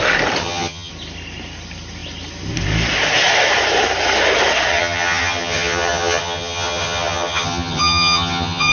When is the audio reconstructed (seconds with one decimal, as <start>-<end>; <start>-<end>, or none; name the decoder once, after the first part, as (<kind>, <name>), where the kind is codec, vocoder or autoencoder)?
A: 0.4-0.9 (vocoder, HiFi-GAN); 4.7-8.7

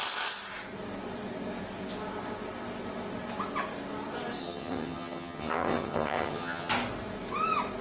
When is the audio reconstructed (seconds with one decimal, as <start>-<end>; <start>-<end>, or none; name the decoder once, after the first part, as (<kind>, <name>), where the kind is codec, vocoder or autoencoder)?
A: 4.4-6.7 (vocoder, HiFi-GAN)

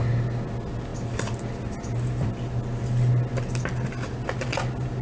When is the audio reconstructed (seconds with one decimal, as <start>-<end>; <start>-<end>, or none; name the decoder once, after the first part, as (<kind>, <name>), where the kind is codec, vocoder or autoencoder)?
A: none

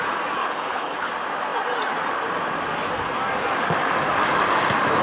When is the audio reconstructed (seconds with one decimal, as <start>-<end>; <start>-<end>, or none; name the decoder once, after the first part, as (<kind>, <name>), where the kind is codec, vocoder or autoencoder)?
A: 0.4-1.1 (codec, HILCodec)

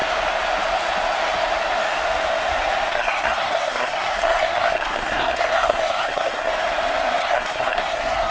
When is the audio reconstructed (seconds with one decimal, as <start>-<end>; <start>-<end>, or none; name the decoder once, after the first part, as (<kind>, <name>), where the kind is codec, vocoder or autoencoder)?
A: 2.9-6.5 (codec, SNAC); 7.2-8.3

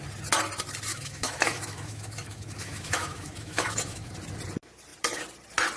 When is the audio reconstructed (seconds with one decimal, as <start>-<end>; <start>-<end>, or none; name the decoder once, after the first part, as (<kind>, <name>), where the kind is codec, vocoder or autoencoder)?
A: 0.9-4.1 (autoencoder, DAC-VAE)

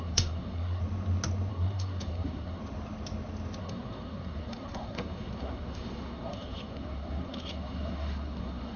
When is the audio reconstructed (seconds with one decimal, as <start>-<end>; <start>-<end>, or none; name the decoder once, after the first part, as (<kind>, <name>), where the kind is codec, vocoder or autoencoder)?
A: 0.0-0.8 (codec, SNAC); 1.5-2.6; 3.6-8.8